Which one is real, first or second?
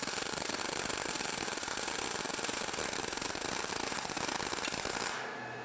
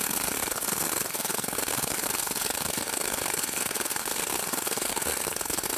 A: first